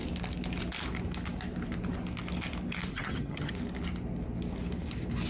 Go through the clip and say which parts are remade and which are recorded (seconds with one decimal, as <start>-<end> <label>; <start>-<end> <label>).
0.0-2.9 recorded; 2.9-3.5 remade; 3.5-5.3 recorded